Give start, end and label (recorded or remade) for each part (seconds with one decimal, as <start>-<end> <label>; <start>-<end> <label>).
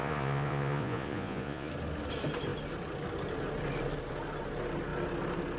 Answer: 0.0-1.7 remade; 1.7-5.6 recorded